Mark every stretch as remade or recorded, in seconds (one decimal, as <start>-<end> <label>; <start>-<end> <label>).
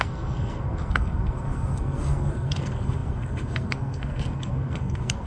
0.0-5.3 remade